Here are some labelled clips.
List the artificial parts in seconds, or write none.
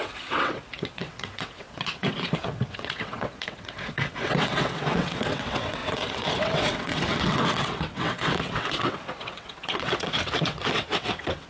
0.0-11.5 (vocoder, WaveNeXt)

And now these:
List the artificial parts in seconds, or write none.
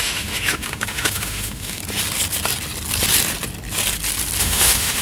0.0-1.8 (autoencoder, DAC-VAE); 4.4-5.0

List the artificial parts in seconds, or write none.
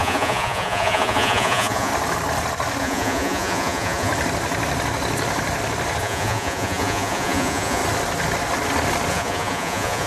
0.0-1.9 (vocoder, Vocos); 2.8-4.1; 6.0-7.8; 9.1-10.1